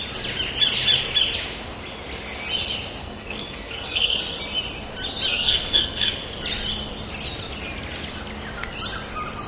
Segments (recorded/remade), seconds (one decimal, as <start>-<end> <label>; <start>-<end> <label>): 0.0-3.0 recorded; 3.0-4.2 remade; 4.2-5.3 recorded; 5.3-6.2 remade; 6.2-9.5 recorded